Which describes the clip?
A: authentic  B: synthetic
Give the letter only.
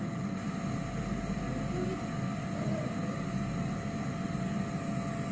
A